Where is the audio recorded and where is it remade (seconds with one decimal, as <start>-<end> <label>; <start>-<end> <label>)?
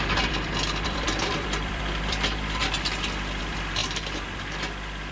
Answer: 0.0-2.6 remade; 2.6-3.4 recorded; 3.4-3.8 remade; 3.8-5.1 recorded